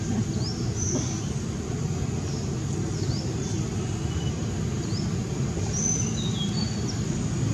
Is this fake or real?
real